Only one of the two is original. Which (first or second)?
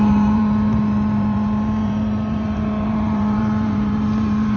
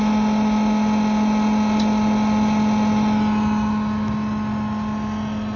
second